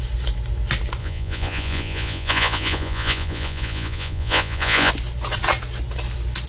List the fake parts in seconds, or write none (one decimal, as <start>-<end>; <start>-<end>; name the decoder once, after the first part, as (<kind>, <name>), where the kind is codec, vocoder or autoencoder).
1.0-4.9 (vocoder, Vocos)